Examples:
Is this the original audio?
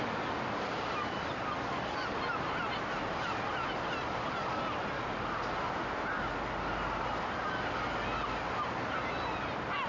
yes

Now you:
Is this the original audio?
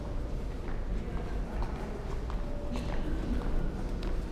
yes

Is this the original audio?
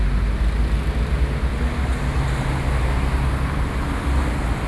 yes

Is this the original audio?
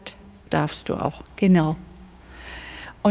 no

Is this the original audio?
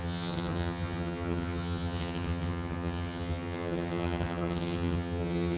no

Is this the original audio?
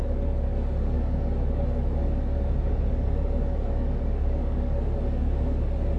no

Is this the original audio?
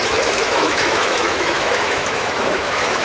no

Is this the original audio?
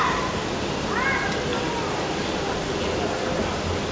yes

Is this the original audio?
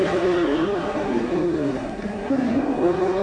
no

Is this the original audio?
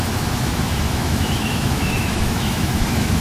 no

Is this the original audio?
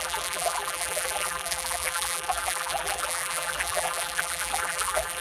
no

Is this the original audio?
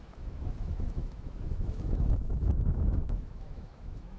no